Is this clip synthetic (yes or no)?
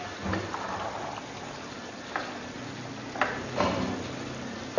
no